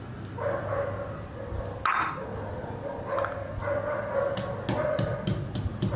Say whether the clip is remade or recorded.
recorded